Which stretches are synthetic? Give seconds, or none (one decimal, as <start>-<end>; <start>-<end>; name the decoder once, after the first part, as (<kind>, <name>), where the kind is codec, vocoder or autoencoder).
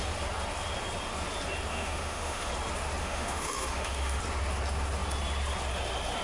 1.7-2.5 (autoencoder, DAC-VAE); 3.0-4.2